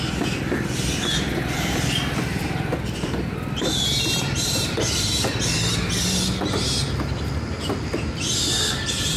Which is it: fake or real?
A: real